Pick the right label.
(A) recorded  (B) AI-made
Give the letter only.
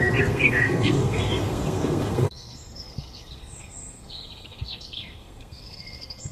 B